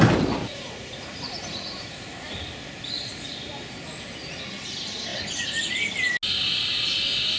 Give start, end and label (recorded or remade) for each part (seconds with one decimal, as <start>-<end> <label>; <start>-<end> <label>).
0.0-0.4 recorded; 0.4-2.3 remade; 2.3-7.4 recorded